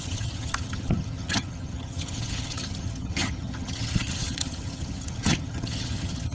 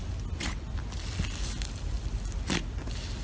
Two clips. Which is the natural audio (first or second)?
second